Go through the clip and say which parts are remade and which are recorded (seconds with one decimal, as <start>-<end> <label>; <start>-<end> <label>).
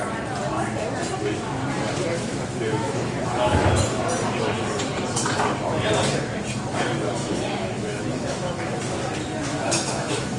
0.0-2.1 recorded; 2.1-4.0 remade; 4.0-7.2 recorded; 7.2-8.8 remade; 8.8-9.5 recorded; 9.5-10.4 remade